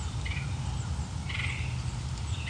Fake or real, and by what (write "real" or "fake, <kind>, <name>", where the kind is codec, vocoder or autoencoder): real